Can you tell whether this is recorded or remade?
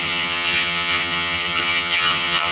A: remade